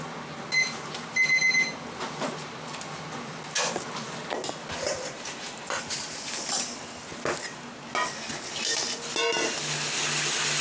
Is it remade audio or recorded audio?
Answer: recorded